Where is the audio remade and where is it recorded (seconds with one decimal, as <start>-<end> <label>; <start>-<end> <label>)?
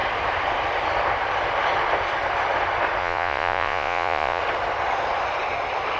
0.0-3.0 recorded; 3.0-4.4 remade; 4.4-6.0 recorded